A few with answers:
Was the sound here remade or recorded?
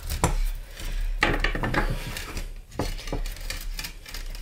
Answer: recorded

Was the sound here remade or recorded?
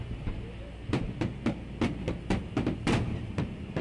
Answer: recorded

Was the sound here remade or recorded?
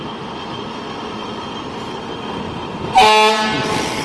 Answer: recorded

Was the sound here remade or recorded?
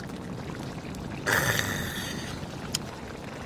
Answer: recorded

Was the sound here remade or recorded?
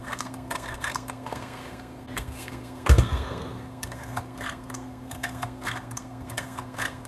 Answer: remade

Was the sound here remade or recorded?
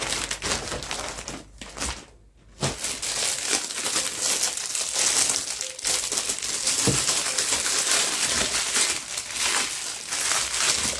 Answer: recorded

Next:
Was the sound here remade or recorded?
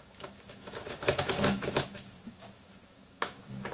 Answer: remade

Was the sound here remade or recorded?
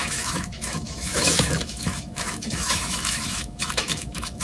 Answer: remade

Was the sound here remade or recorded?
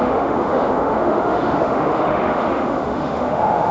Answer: remade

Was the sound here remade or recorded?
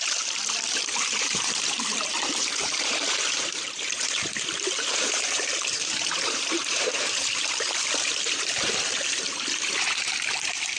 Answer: remade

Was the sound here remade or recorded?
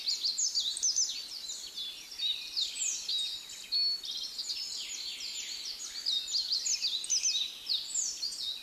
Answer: recorded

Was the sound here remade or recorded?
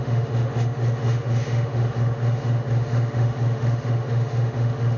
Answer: remade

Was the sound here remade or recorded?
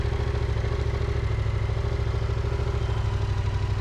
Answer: recorded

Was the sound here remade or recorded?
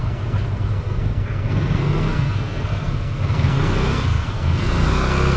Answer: remade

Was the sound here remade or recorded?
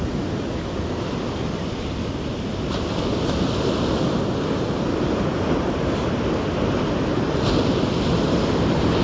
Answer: recorded